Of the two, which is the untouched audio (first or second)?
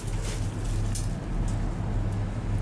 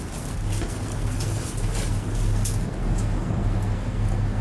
first